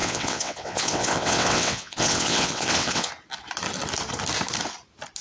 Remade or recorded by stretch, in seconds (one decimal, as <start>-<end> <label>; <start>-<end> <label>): 0.0-3.1 remade; 3.1-5.2 recorded